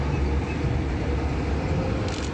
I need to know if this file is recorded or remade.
recorded